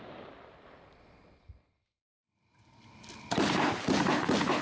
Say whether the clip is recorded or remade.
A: recorded